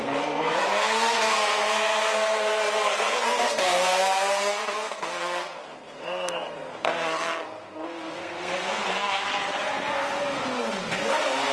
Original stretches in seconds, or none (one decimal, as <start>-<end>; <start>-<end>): 9.3-9.9